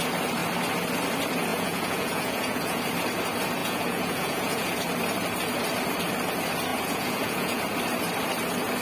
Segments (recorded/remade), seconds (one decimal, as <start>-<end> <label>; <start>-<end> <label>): 0.0-1.5 recorded; 1.5-2.8 remade; 2.8-3.6 recorded; 3.6-4.7 remade; 4.7-6.7 recorded; 6.7-7.6 remade; 7.6-8.8 recorded

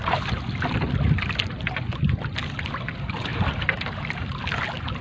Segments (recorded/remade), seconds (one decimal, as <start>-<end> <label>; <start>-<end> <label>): 0.0-3.3 recorded; 3.3-4.0 remade; 4.0-5.0 recorded

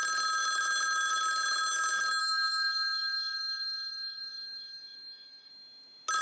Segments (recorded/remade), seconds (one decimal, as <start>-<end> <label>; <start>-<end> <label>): 0.0-2.2 recorded; 2.2-5.5 remade; 5.5-6.2 recorded

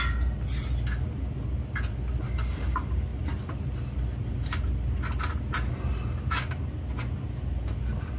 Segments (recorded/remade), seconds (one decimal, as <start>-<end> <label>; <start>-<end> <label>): 0.0-8.2 recorded

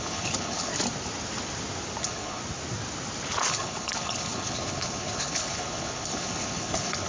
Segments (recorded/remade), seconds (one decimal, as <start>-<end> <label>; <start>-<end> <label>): 0.0-0.7 remade; 0.7-2.0 recorded; 2.0-2.4 remade; 2.4-3.5 recorded; 3.5-7.1 remade

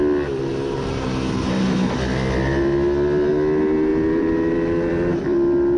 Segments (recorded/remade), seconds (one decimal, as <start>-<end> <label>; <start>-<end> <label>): 0.0-3.9 recorded; 3.9-5.1 remade; 5.1-5.8 recorded

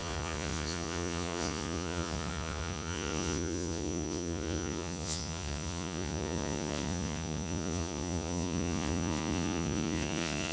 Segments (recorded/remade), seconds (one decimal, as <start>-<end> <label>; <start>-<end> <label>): 0.0-10.5 remade